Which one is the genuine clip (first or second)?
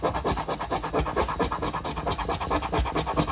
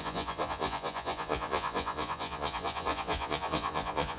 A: first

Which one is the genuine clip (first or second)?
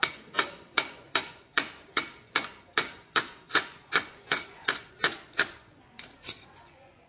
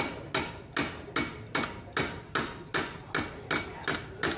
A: second